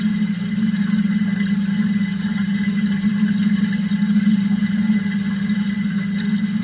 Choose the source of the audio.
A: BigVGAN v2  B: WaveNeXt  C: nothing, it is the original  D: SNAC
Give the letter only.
C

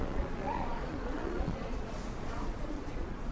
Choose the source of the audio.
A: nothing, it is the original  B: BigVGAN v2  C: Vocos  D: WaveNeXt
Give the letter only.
C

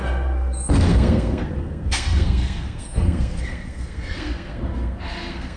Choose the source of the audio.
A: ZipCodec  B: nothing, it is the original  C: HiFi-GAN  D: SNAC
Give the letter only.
D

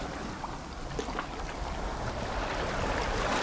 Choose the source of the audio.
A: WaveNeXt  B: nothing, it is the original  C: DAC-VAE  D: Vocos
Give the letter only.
B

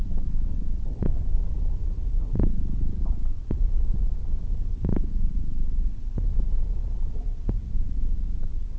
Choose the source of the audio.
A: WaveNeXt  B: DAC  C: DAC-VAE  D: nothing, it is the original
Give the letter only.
A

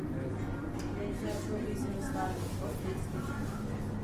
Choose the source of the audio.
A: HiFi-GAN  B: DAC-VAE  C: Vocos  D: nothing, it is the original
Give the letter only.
D